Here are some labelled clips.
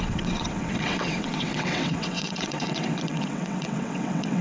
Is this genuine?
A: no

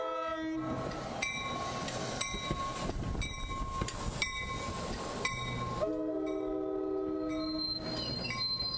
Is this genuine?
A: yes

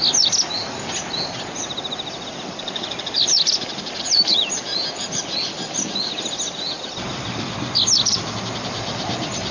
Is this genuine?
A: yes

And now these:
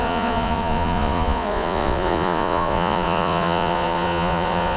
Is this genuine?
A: no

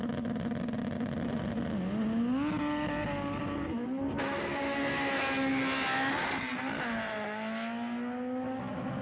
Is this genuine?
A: yes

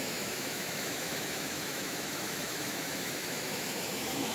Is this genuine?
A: no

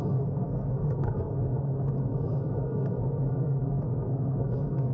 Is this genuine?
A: no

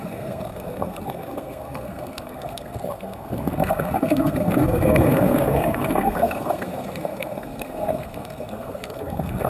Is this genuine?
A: no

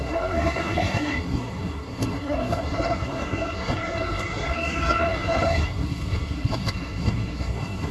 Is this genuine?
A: no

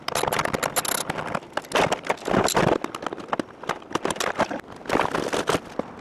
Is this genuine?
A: yes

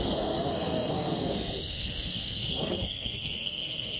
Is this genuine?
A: no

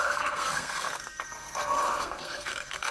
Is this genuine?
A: no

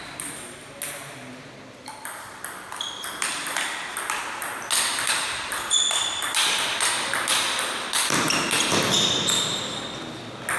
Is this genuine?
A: yes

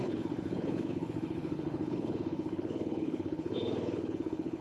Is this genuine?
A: no